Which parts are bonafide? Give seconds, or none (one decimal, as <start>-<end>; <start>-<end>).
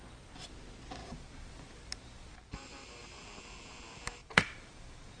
0.0-1.0; 3.2-4.2